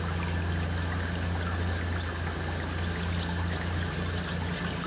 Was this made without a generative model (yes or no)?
yes